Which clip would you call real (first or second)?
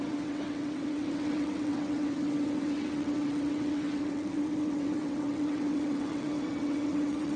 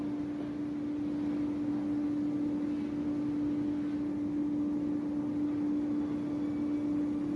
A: second